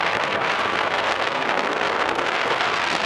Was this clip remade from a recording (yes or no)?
yes